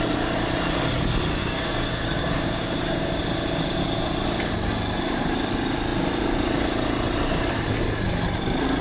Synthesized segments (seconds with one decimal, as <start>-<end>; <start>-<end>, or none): 1.4-3.2